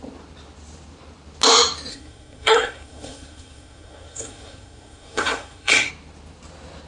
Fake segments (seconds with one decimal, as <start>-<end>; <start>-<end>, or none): 1.9-5.9